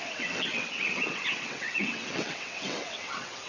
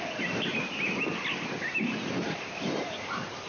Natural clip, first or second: second